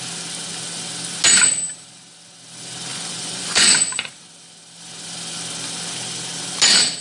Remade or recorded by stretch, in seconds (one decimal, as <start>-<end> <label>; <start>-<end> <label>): 0.0-2.9 recorded; 2.9-4.1 remade; 4.1-7.0 recorded